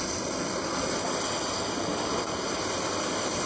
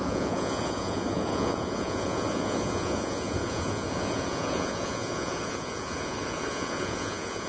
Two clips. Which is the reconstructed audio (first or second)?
second